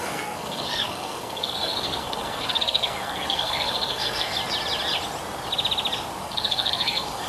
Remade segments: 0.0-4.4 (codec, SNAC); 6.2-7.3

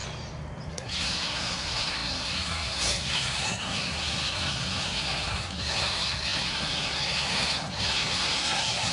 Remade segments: 0.7-8.9 (codec, SNAC)

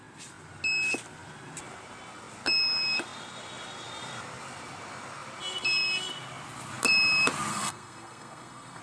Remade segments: 7.5-8.8 (codec, SNAC)